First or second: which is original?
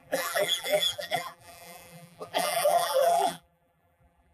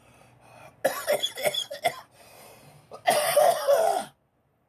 second